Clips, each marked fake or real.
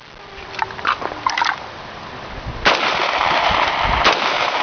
real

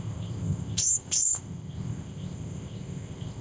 fake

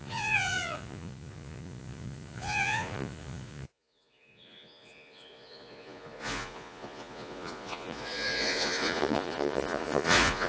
fake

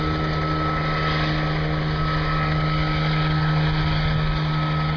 real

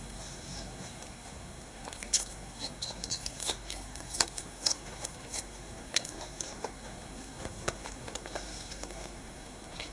fake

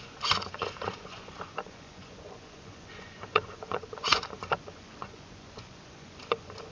fake